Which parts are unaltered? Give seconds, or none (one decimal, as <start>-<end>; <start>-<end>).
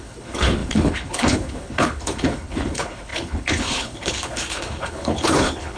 none